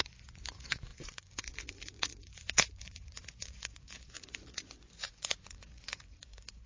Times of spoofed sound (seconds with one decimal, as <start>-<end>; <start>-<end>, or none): 0.0-6.7